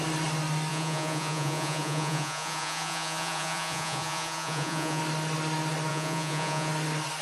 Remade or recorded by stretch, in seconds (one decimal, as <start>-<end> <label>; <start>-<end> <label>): 0.0-0.7 recorded; 0.7-5.0 remade; 5.0-5.9 recorded; 5.9-6.7 remade; 6.7-7.2 recorded